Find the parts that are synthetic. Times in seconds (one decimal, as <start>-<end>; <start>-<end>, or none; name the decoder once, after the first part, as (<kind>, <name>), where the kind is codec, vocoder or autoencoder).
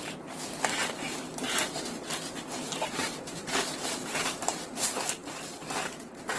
0.0-6.4 (vocoder, BigVGAN v2)